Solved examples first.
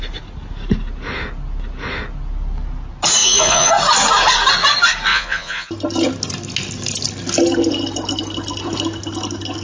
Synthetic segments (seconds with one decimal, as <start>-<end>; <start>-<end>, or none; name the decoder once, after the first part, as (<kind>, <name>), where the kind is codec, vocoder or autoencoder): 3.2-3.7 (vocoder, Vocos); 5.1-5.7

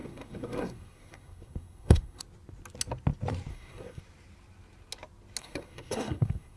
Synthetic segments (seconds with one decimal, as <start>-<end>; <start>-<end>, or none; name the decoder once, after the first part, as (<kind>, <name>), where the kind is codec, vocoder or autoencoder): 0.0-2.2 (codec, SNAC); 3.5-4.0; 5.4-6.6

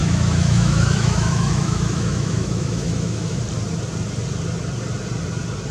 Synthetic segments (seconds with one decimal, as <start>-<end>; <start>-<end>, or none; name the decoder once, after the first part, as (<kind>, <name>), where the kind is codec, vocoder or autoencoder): 0.0-3.4 (autoencoder, DAC-VAE)

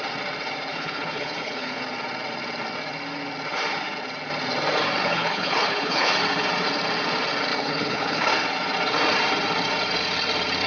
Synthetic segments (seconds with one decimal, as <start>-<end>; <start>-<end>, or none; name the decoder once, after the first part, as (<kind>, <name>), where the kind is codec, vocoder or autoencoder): 0.7-1.8 (codec, HILCodec); 5.0-6.1; 7.5-8.3

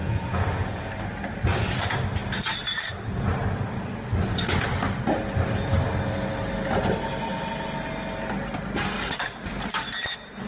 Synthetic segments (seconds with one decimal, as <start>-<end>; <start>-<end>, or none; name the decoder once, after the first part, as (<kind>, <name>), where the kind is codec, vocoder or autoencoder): 0.0-0.8 (vocoder, Vocos)

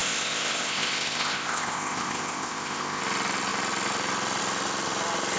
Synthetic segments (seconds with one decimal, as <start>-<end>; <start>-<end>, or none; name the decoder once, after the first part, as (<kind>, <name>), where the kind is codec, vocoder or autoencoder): 0.0-3.0 (codec, ZipCodec)